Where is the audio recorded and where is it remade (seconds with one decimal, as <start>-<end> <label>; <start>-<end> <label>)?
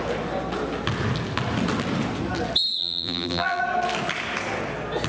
0.0-2.8 recorded; 2.8-3.6 remade; 3.6-5.1 recorded